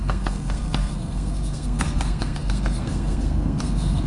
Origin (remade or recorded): remade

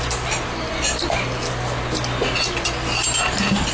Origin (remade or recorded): recorded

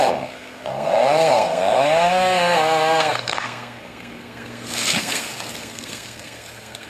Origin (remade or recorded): remade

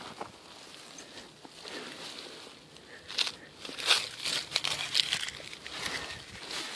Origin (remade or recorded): recorded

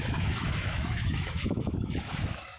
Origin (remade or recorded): remade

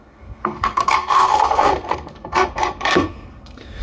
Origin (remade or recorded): remade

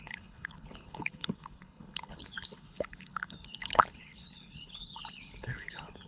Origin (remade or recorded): remade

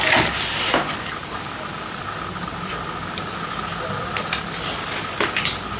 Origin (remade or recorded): recorded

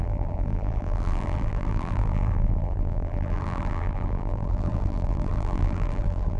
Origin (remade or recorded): remade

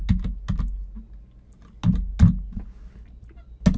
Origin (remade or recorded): recorded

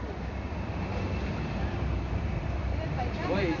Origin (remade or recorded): recorded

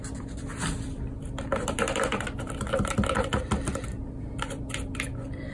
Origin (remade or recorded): remade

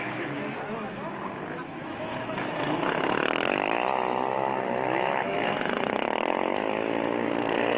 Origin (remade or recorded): remade